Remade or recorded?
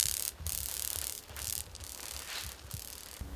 recorded